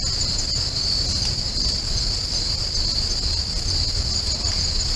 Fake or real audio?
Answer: real